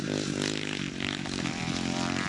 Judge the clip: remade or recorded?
recorded